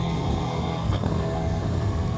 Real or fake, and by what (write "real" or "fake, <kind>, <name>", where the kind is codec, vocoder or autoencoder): fake, codec, SNAC